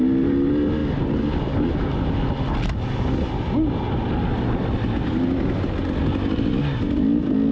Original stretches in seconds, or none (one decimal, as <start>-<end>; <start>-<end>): 0.0-7.5